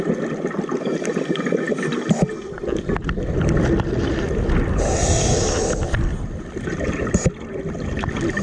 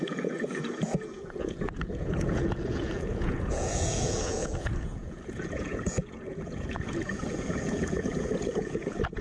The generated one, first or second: second